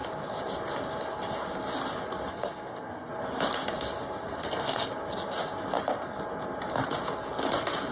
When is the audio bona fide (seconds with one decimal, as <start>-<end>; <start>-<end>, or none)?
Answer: 0.0-2.3; 3.1-4.2; 4.9-7.9